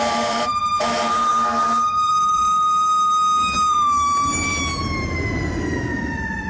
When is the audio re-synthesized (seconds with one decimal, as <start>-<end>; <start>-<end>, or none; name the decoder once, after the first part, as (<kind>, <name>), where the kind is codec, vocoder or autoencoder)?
0.0-1.3 (vocoder, BigVGAN v2); 2.1-4.5; 5.5-6.5